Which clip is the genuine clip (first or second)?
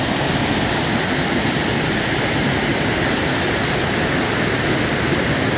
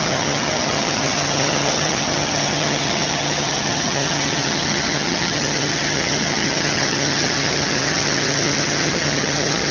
first